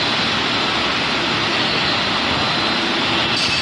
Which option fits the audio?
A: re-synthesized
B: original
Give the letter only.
B